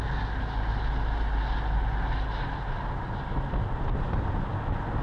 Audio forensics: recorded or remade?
recorded